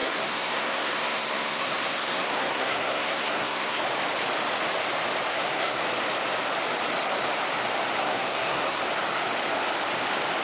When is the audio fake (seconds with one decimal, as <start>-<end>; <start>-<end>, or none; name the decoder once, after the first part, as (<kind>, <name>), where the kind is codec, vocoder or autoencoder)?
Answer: 0.0-3.8 (codec, SNAC); 5.3-5.8; 8.0-8.8